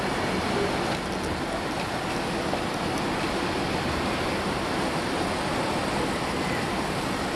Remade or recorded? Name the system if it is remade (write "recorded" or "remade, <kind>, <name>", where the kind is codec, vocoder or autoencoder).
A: recorded